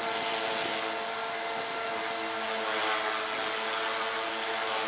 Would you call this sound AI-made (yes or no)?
no